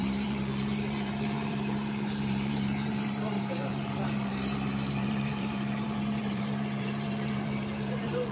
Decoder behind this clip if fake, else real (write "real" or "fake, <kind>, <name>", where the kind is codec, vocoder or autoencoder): fake, vocoder, BigVGAN v2